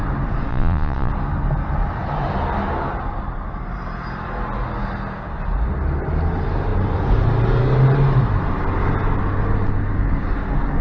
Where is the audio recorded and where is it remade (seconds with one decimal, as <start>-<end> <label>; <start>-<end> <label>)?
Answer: 0.0-0.5 recorded; 0.5-1.1 remade; 1.1-10.8 recorded